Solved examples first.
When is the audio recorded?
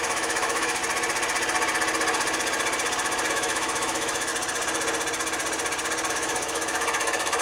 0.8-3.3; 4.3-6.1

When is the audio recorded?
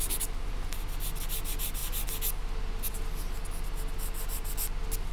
0.0-5.1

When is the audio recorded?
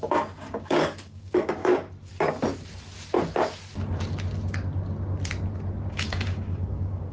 1.7-5.9